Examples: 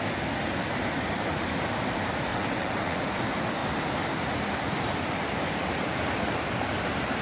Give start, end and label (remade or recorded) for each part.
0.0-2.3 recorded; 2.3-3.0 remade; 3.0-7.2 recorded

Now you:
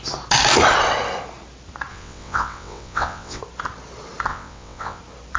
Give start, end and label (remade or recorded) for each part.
0.0-1.9 recorded; 1.9-3.4 remade; 3.4-4.3 recorded; 4.3-5.0 remade; 5.0-5.4 recorded

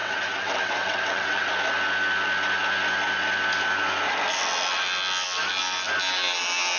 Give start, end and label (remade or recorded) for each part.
0.0-1.5 remade; 1.5-6.8 recorded